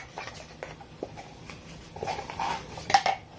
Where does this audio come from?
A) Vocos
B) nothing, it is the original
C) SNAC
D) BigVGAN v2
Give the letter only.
B